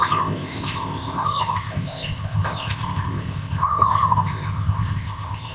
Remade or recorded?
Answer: remade